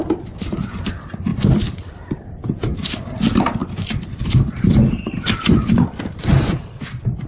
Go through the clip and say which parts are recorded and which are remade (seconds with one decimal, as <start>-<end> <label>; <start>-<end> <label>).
0.0-7.3 recorded